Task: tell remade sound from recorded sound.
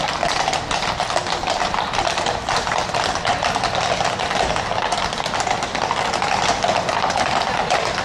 recorded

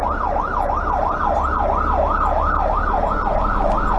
recorded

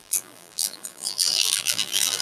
remade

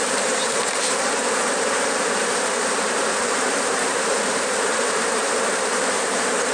remade